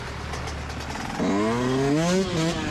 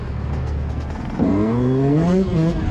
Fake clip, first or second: second